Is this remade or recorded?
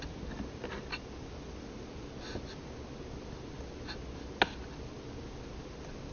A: recorded